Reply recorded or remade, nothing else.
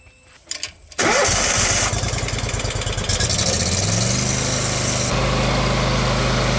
recorded